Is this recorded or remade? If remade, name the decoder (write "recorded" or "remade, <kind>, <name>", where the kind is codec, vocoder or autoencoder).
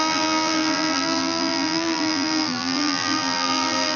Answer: remade, vocoder, BigVGAN v2